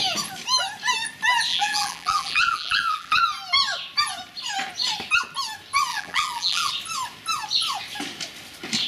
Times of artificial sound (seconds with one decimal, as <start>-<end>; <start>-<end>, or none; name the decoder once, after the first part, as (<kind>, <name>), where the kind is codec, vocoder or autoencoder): 1.5-3.2 (vocoder, BigVGAN v2); 5.9-6.7